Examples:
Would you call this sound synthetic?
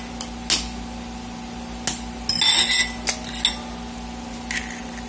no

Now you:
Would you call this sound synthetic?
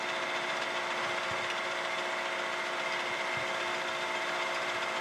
no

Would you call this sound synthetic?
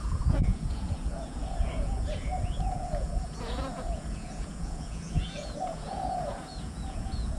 yes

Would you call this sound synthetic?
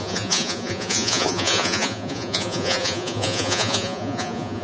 yes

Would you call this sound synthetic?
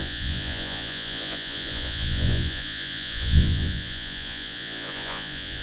yes